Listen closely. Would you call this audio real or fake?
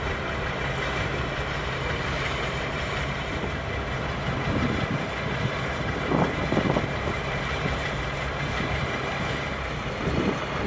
fake